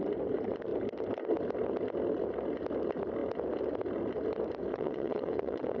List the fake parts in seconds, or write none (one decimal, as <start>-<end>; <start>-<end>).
4.7-5.8